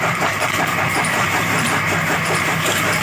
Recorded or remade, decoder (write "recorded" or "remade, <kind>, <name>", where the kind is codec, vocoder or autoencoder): remade, vocoder, BigVGAN v2